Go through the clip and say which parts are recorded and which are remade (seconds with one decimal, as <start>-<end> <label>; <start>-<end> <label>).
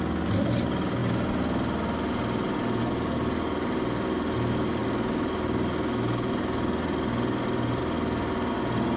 0.0-9.0 recorded